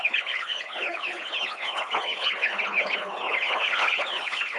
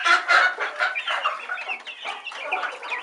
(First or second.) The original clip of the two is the second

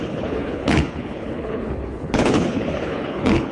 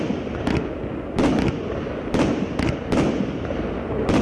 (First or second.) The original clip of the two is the second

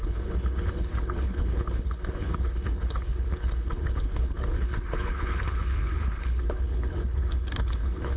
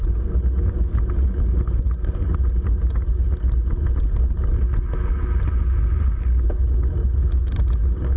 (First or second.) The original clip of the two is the second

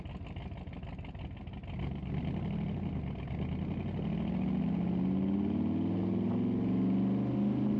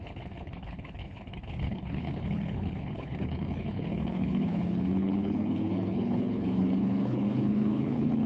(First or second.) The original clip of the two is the first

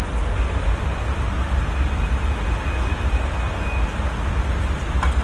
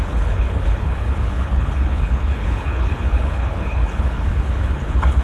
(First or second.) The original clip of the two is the first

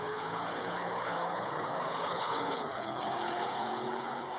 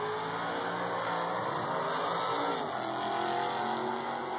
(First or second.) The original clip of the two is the second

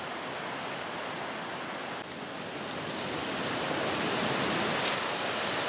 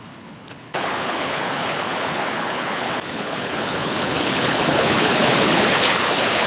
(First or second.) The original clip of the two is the first